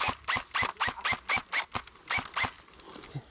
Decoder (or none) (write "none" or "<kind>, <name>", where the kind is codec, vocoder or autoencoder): none